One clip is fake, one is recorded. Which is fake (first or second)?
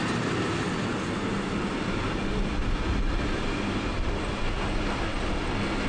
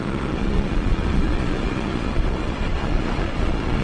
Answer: second